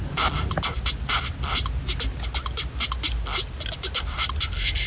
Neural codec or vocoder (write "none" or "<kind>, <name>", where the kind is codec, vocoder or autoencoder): none